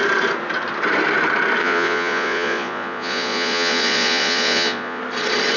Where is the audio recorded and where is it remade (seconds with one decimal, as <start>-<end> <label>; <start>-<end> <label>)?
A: 0.0-1.6 recorded; 1.6-5.0 remade; 5.0-5.6 recorded